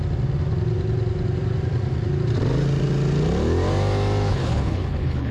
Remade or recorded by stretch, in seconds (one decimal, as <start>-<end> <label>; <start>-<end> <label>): 0.0-4.3 recorded; 4.3-5.3 remade